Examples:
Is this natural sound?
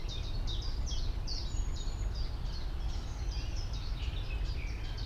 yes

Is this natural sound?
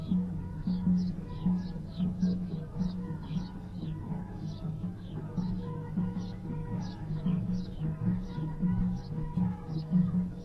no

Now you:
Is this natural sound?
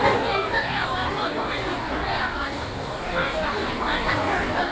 no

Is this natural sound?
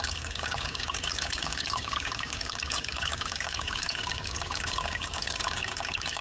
no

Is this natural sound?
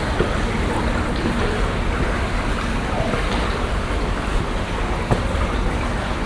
yes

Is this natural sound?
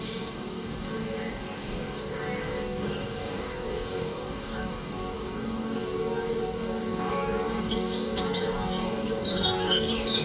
no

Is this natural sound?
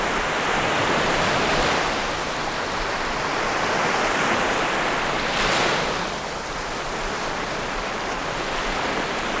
yes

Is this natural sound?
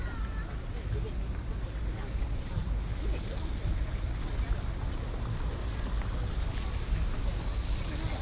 yes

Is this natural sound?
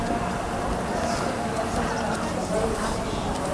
yes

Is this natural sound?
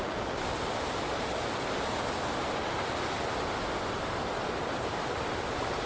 yes